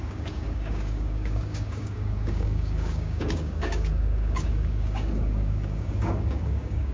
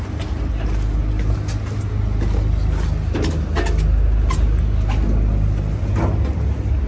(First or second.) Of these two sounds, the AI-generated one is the first